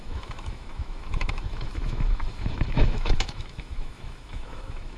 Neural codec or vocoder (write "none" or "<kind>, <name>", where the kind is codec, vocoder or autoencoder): autoencoder, DAC-VAE